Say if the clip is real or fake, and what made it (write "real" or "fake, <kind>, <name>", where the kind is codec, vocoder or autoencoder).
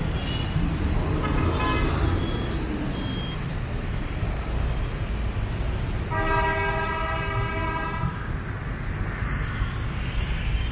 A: real